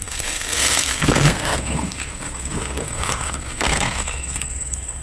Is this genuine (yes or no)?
no